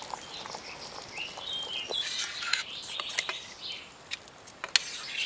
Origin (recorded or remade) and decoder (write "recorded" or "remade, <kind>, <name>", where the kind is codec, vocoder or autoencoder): recorded